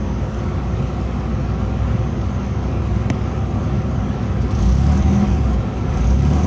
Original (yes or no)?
no